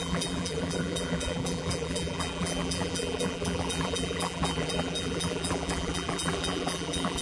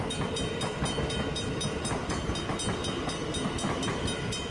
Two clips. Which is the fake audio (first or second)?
first